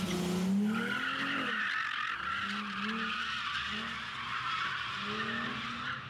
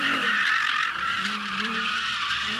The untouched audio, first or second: first